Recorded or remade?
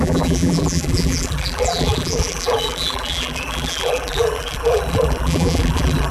remade